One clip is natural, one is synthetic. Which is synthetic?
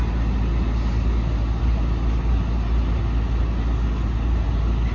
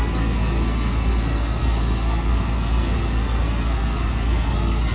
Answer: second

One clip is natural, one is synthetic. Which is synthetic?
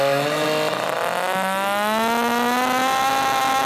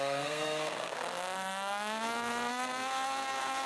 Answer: second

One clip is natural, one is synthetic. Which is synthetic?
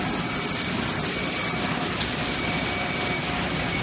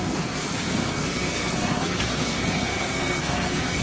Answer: second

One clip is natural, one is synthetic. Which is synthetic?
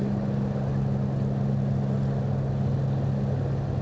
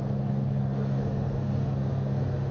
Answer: second